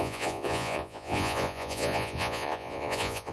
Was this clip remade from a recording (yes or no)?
yes